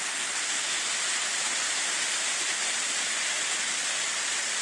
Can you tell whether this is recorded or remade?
recorded